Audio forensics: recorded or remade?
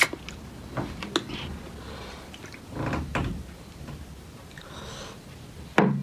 recorded